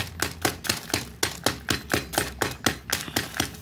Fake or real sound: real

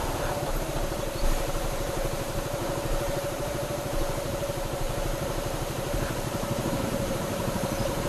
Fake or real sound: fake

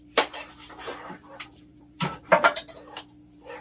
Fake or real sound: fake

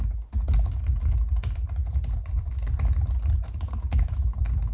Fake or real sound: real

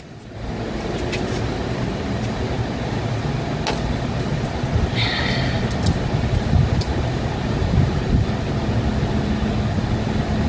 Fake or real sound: real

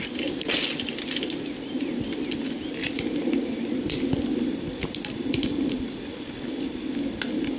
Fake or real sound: fake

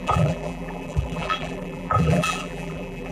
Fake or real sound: fake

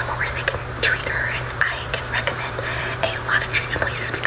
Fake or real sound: fake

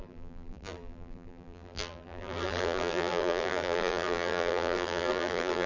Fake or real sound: fake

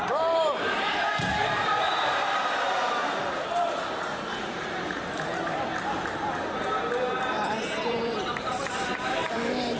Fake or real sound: fake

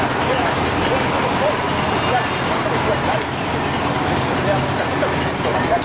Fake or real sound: real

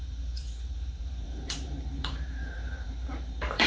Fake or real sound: fake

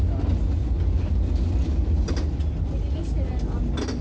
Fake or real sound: real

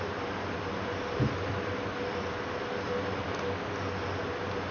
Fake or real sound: real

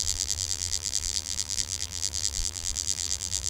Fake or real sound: fake